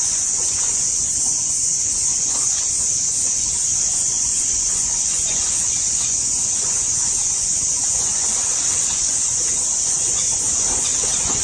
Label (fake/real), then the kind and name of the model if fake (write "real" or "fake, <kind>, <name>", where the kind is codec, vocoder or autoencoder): fake, vocoder, Vocos